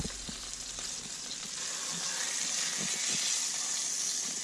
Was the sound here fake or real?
real